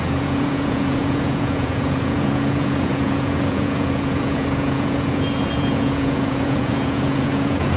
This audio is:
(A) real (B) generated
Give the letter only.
B